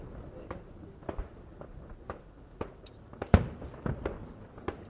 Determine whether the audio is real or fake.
real